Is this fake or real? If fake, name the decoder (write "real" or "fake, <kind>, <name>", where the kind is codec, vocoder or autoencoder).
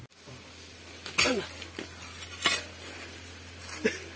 real